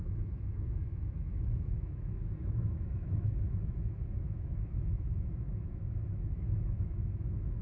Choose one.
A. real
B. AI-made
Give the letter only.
B